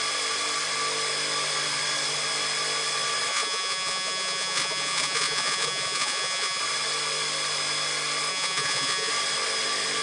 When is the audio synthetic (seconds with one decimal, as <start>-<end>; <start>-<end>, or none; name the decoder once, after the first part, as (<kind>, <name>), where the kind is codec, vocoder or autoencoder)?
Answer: 3.3-6.6 (vocoder, Vocos); 8.3-9.1

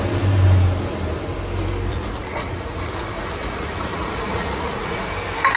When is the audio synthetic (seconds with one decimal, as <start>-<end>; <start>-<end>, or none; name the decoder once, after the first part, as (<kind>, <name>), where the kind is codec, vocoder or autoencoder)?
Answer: 1.9-5.1 (vocoder, Vocos)

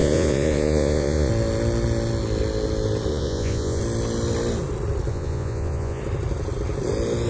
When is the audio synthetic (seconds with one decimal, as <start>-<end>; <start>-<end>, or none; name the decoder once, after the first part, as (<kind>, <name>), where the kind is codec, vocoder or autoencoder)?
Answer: 0.0-1.3 (vocoder, Vocos); 3.1-3.8; 5.1-6.0